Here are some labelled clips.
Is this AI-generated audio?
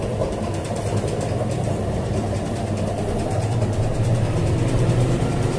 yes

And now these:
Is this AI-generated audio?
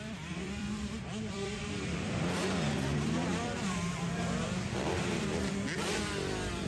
yes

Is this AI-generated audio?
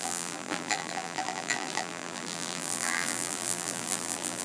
yes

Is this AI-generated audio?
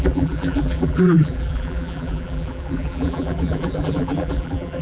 yes